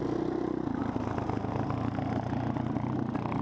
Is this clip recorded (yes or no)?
yes